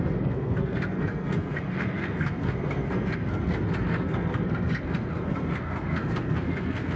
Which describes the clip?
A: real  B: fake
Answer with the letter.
B